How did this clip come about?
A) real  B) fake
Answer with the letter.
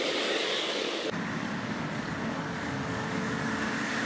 B